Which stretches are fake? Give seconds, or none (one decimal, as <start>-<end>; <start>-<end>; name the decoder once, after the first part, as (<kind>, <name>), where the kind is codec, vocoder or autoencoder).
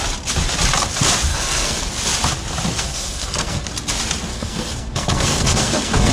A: 1.3-1.9 (codec, SNAC); 2.7-3.7; 4.3-6.1